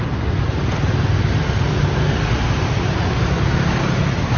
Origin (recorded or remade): recorded